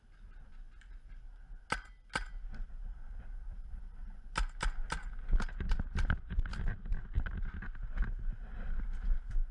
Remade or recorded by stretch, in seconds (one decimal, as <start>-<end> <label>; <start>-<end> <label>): 0.0-9.5 recorded